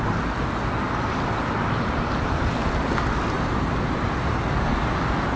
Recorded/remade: recorded